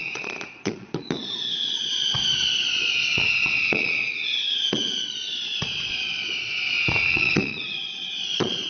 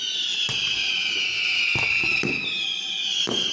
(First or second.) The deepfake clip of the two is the first